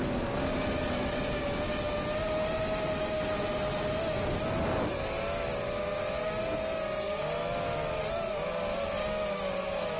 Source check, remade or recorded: recorded